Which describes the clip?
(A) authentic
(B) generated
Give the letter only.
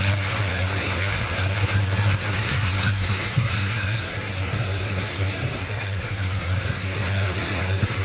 B